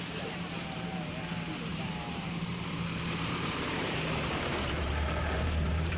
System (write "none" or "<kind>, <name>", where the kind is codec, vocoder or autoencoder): vocoder, BigVGAN v2